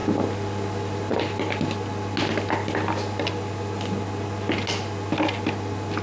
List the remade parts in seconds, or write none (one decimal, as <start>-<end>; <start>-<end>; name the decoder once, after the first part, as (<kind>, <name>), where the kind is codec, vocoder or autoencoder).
none